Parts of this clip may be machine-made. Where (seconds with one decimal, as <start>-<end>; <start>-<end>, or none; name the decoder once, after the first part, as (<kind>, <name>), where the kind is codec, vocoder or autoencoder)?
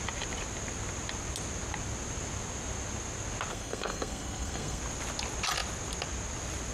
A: 3.5-4.8 (codec, SNAC)